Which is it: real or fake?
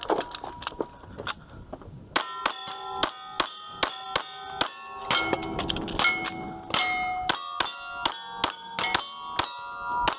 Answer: real